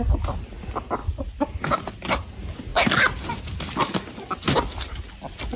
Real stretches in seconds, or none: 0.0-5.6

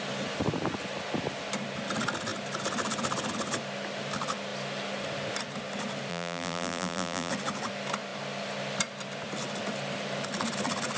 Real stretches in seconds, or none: 0.0-6.1; 7.3-11.0

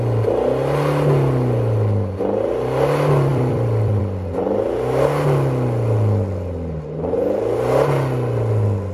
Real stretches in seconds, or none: 0.0-3.3; 4.0-8.9

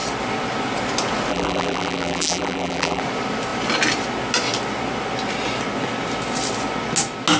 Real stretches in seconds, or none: 0.0-1.3; 3.0-7.4

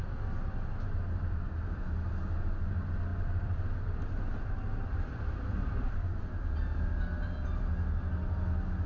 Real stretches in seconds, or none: 0.0-3.1; 6.2-8.9

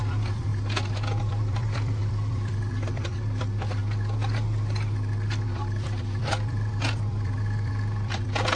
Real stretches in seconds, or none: 0.5-1.2; 3.8-5.4